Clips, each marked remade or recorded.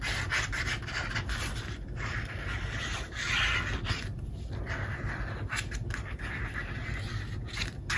recorded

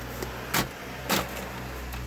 recorded